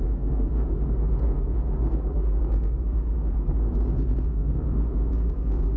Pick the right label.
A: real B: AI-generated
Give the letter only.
B